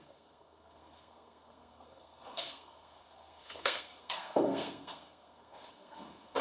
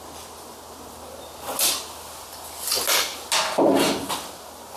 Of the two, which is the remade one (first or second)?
first